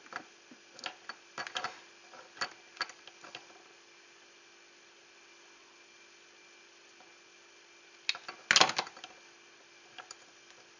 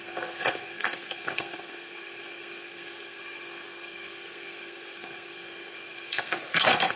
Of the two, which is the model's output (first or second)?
second